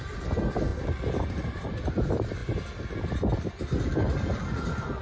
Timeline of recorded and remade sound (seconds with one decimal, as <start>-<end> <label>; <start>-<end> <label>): 0.0-5.0 recorded

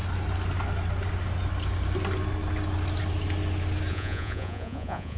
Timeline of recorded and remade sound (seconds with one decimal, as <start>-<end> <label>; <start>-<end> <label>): 0.0-3.9 recorded; 3.9-5.2 remade

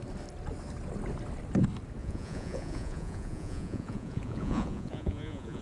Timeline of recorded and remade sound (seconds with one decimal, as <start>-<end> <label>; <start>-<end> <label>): 0.0-2.0 recorded; 2.0-5.6 remade

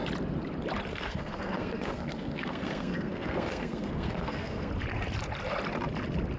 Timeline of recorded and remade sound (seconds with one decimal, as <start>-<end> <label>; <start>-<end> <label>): 0.0-0.9 recorded; 0.9-4.7 remade; 4.7-6.4 recorded

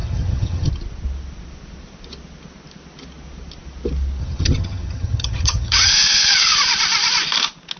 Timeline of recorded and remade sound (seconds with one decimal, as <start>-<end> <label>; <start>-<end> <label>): 0.0-0.7 remade; 0.7-4.2 recorded; 4.2-5.9 remade; 5.9-7.8 recorded